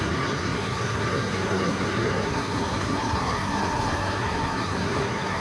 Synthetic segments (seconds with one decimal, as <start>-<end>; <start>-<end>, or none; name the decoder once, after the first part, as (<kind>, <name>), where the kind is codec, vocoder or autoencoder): 0.0-5.4 (codec, SNAC)